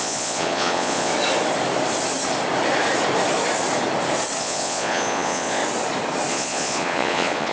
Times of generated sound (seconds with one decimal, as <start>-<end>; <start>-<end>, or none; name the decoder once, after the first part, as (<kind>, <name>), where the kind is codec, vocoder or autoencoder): 0.0-1.1 (vocoder, Vocos); 4.4-5.6; 6.3-7.5